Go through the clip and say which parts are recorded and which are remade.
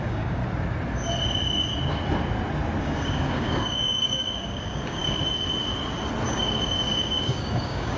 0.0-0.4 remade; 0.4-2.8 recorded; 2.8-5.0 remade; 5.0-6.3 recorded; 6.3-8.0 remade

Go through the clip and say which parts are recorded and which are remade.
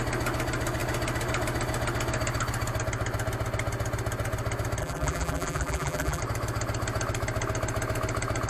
0.0-4.8 recorded; 4.8-6.2 remade; 6.2-8.5 recorded